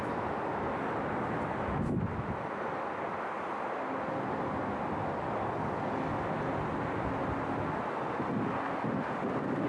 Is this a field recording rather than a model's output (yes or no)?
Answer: yes